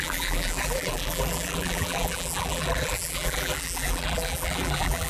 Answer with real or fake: fake